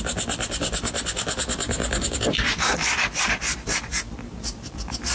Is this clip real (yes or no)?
yes